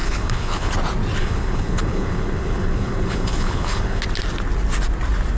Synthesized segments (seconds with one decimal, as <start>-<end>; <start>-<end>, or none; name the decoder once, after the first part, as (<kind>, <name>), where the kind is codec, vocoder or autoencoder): 0.0-0.7 (codec, HILCodec); 1.2-4.0

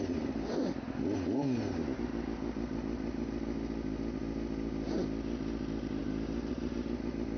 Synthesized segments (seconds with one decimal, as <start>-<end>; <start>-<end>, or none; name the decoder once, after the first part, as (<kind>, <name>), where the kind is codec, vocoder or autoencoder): none

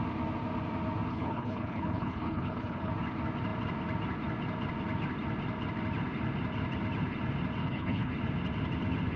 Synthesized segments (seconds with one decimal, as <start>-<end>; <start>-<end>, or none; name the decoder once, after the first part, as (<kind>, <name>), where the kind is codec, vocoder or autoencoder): 1.1-2.9 (codec, HILCodec); 7.6-8.1